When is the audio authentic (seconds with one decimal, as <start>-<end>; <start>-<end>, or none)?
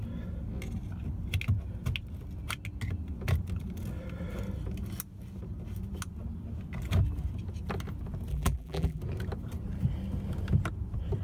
0.0-8.3; 9.0-11.2